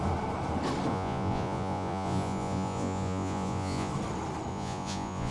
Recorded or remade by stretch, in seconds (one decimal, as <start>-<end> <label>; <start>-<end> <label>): 0.0-0.9 recorded; 0.9-3.9 remade; 3.9-4.5 recorded; 4.5-5.3 remade